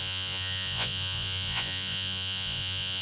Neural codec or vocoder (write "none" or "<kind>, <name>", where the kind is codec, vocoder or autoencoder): vocoder, Vocos